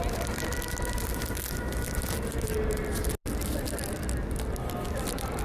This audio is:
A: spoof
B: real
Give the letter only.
B